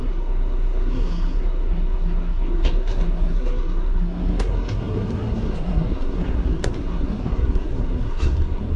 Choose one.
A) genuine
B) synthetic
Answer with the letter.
B